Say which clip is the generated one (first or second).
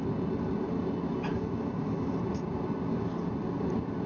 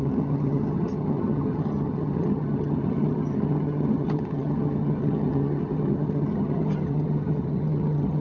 second